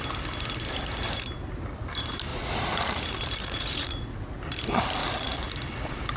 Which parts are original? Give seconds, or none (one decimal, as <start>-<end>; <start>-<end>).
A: 0.0-2.3; 3.0-3.4; 4.4-5.0; 5.5-6.2